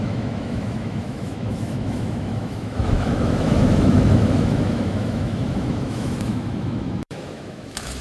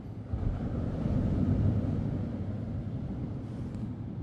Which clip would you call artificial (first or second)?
first